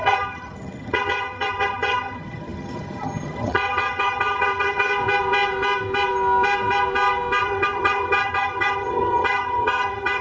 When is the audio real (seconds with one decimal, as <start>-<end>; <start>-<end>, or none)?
4.9-7.4

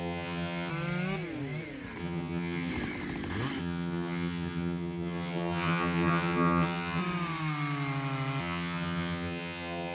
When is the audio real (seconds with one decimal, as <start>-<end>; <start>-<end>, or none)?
0.7-2.0; 2.7-3.6; 7.0-8.4